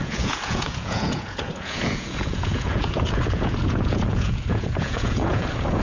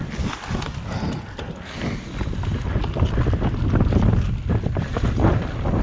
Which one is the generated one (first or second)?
first